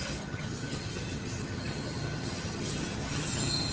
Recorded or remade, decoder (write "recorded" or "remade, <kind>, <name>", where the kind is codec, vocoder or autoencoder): remade, vocoder, HiFi-GAN